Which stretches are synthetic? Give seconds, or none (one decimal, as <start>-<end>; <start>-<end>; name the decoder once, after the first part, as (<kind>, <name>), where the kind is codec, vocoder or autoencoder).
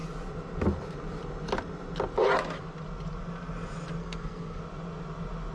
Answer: 4.0-4.6 (codec, SNAC)